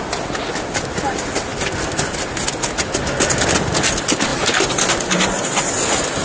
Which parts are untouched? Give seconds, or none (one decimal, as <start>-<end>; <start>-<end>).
0.0-6.2

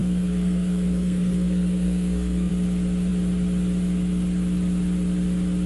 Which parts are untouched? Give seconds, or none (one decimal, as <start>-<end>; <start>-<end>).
2.5-5.7